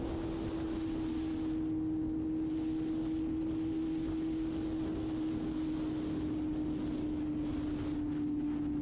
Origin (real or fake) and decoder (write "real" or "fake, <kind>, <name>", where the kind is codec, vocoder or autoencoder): real